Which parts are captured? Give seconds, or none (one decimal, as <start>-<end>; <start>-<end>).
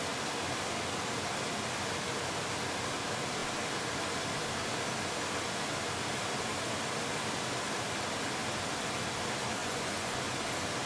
0.0-9.6; 10.2-10.9